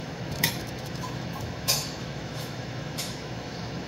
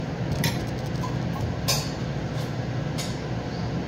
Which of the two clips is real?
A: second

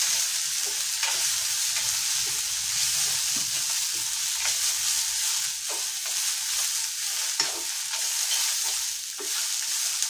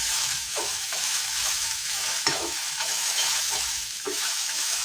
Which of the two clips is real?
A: first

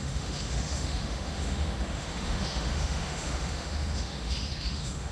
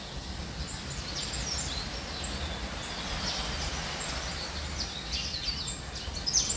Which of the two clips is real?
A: second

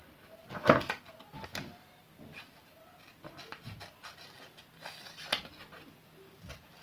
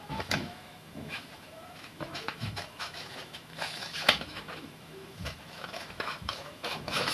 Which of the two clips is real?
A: first